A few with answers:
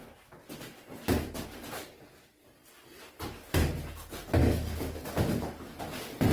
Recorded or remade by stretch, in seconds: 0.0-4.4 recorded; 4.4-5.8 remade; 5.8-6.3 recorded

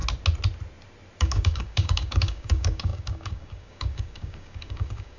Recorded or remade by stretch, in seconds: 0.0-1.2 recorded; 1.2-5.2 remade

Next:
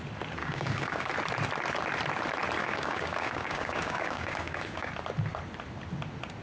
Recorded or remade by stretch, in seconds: 0.0-0.4 recorded; 0.4-1.1 remade; 1.1-2.6 recorded; 2.6-4.9 remade; 4.9-6.4 recorded